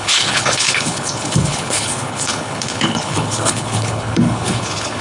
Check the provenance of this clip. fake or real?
fake